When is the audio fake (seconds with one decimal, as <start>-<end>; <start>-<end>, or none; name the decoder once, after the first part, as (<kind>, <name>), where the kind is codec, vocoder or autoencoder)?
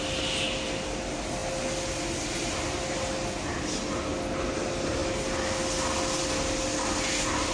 none